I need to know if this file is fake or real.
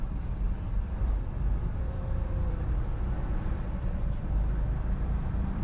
fake